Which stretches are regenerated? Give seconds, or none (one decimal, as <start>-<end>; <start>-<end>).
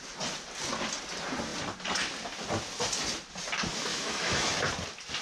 3.9-4.6